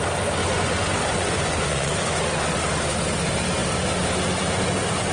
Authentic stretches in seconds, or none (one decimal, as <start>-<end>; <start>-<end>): 0.0-0.4; 2.6-5.1